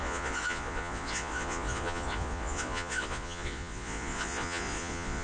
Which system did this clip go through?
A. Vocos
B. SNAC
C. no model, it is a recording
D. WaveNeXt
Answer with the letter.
A